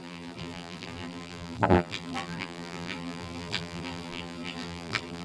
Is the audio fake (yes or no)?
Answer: yes